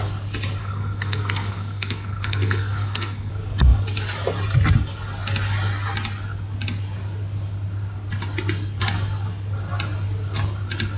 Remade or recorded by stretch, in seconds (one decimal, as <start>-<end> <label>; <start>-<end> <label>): 0.0-0.6 recorded; 0.6-3.3 remade; 3.3-11.0 recorded